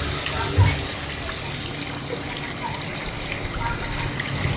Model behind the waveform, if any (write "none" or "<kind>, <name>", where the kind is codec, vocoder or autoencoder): none